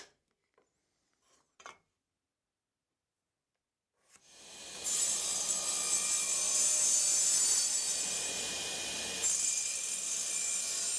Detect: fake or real fake